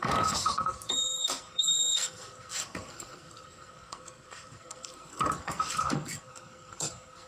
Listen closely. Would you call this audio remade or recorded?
remade